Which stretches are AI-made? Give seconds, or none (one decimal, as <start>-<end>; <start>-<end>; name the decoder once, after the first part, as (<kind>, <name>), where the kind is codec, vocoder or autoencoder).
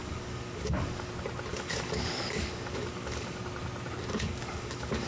0.0-1.1 (codec, DAC); 1.5-3.4; 4.1-5.1